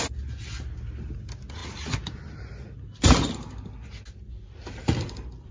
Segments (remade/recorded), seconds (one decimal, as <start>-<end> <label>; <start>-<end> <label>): 0.0-5.5 recorded